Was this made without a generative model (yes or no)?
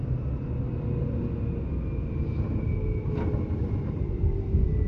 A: yes